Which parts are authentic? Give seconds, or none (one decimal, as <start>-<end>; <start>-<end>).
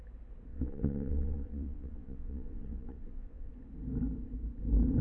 0.0-0.5; 3.5-5.0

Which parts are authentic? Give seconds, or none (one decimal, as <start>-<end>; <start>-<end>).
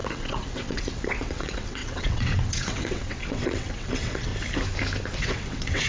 4.3-5.2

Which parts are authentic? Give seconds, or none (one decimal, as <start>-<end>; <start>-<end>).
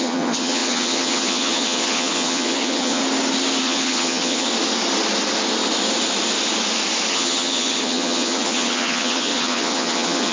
3.0-3.6; 4.5-7.1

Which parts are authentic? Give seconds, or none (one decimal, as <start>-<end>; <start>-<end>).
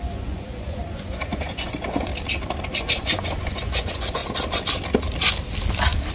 2.1-2.8; 4.2-6.1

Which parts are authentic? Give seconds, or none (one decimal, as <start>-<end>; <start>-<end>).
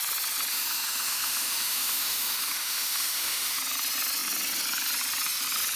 0.0-0.5; 3.6-5.8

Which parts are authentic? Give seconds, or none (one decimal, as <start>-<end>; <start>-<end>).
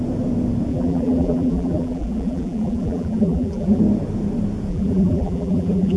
0.0-0.7; 3.8-4.7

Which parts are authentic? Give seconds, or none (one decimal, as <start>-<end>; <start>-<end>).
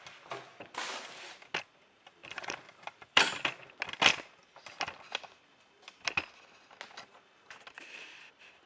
0.0-2.2; 3.6-8.7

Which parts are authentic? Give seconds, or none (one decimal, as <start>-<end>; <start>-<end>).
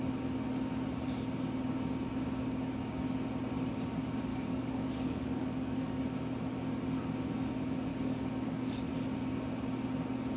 0.0-4.3; 6.0-7.9; 8.9-10.4